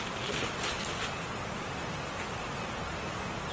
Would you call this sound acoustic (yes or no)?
yes